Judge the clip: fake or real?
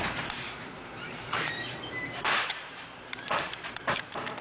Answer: fake